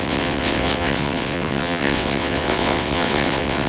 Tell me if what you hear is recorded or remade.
remade